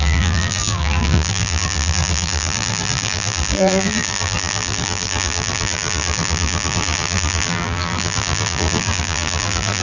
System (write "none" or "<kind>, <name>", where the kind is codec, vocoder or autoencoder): vocoder, BigVGAN v2